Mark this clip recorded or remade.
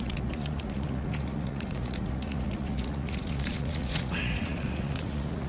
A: remade